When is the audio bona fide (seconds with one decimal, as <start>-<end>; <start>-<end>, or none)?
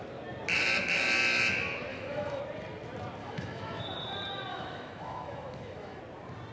0.0-1.9; 2.4-3.2; 3.8-4.5; 6.0-6.5